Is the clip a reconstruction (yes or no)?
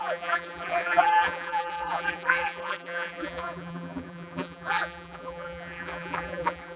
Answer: yes